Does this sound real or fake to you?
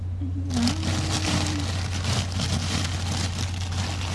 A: real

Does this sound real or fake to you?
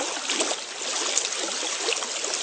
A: real